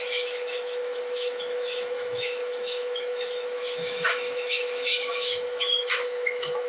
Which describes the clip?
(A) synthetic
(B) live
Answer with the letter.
A